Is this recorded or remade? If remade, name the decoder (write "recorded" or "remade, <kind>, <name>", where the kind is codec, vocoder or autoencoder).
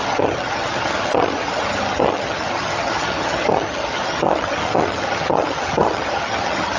remade, vocoder, HiFi-GAN